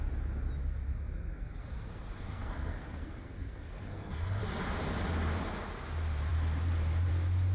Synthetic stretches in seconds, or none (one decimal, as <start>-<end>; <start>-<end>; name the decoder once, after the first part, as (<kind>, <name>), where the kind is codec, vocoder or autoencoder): 0.6-4.4 (codec, SNAC)